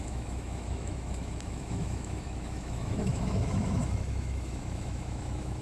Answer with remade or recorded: remade